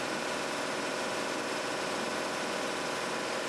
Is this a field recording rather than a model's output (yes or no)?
yes